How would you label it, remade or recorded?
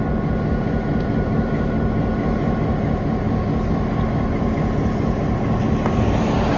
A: recorded